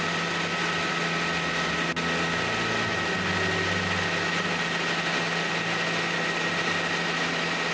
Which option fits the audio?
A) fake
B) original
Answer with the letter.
B